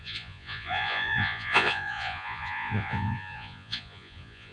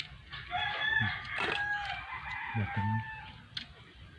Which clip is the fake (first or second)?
first